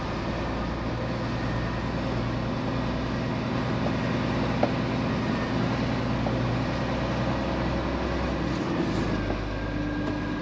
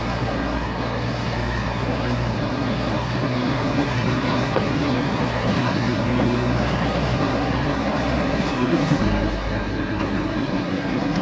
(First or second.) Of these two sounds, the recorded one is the first